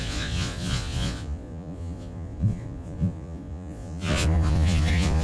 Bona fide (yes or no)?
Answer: no